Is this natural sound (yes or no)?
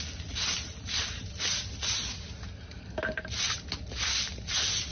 yes